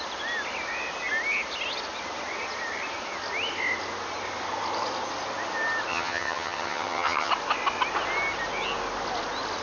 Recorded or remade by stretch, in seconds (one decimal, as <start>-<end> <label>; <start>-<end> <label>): 0.0-5.9 recorded; 5.9-7.3 remade; 7.3-9.6 recorded